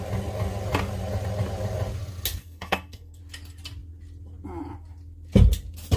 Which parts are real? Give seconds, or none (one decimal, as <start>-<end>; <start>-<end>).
0.0-2.4; 3.2-6.0

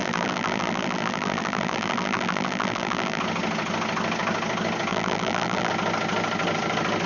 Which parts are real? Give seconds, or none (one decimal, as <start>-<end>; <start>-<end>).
3.2-4.9; 5.7-7.1

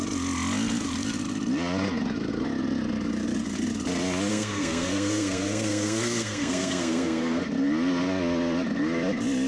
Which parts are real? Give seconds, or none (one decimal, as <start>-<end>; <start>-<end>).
0.0-4.3; 7.4-9.5

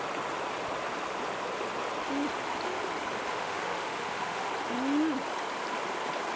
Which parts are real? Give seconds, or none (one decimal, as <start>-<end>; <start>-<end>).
0.0-3.3; 4.5-6.4

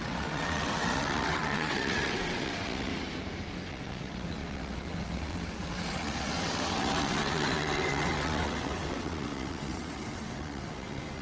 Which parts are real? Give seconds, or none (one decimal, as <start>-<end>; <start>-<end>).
2.9-3.7

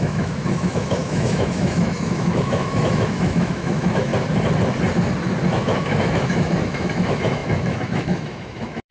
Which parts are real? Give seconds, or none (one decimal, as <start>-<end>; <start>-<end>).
4.1-5.5

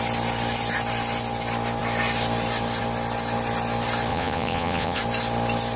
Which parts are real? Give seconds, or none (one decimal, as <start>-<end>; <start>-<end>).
0.0-4.1; 5.0-5.8

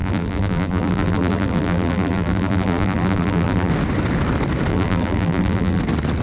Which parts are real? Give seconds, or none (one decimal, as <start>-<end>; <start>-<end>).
3.7-4.7; 5.8-6.2